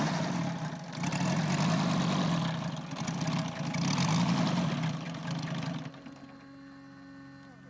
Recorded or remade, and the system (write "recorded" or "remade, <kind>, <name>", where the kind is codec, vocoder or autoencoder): recorded